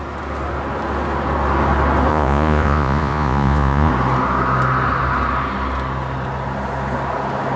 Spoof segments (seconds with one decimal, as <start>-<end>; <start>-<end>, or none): 2.1-3.9